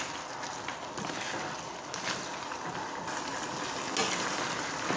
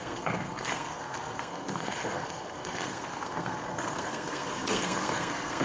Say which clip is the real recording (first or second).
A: first